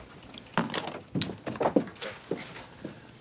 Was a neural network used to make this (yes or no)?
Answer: no